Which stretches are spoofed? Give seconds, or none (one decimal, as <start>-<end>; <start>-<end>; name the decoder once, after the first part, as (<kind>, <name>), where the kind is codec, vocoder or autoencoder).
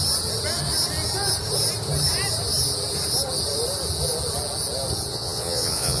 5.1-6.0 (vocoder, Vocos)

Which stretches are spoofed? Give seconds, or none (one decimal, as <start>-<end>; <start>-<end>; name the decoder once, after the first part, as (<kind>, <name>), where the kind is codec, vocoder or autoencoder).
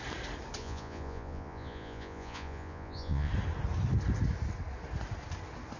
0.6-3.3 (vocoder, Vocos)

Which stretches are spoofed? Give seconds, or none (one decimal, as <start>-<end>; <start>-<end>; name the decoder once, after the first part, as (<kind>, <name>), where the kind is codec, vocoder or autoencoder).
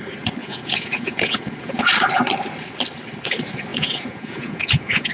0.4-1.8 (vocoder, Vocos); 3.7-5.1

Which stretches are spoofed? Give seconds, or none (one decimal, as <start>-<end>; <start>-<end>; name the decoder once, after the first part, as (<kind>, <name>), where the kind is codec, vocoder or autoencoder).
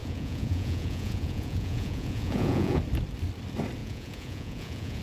0.0-2.8 (vocoder, Vocos); 3.8-5.0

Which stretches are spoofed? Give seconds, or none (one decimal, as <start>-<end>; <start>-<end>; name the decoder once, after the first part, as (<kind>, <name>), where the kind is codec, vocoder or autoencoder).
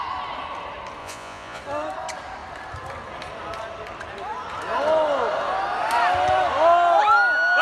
1.0-1.6 (vocoder, Vocos)